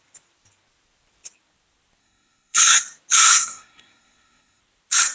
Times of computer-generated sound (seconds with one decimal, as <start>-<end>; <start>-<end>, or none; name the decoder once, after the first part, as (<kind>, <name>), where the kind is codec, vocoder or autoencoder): 2.0-2.8 (codec, SNAC); 3.3-4.6